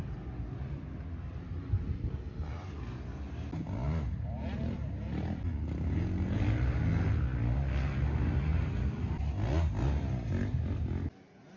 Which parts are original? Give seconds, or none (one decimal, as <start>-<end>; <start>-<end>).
0.0-11.6